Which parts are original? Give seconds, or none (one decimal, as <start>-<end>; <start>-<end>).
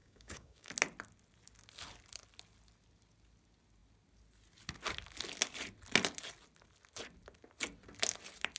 0.7-8.6